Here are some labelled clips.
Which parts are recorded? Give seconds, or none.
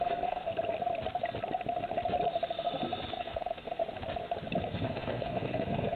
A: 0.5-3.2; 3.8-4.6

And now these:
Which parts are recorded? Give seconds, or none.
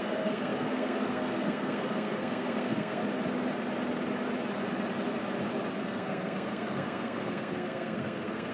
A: 3.0-5.8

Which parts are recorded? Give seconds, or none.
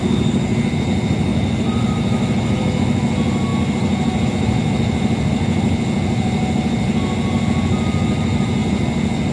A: 0.0-9.3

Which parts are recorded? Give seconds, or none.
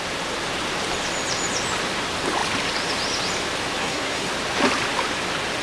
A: 0.0-3.8; 4.3-5.6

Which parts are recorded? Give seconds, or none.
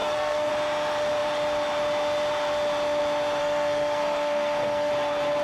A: 0.5-3.4; 4.9-5.4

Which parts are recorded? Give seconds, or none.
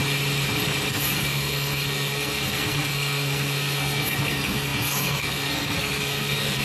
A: 0.0-0.9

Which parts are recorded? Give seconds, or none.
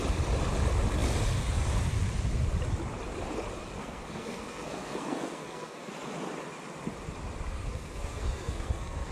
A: 0.0-3.8; 5.9-7.5